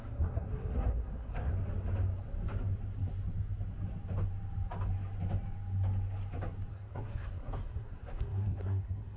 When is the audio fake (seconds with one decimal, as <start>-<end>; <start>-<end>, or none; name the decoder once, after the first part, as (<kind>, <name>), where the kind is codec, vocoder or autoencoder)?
0.0-1.5 (codec, SNAC); 6.7-9.2